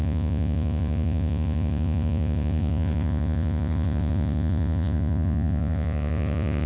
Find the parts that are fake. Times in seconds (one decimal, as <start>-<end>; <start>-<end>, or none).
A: 0.0-6.7